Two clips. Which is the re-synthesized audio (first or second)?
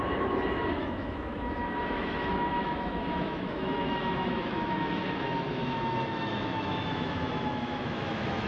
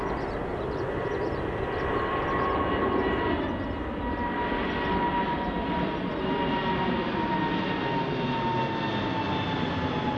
first